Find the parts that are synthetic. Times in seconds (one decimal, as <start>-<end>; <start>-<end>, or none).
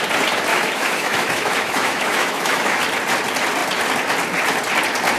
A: 0.5-2.8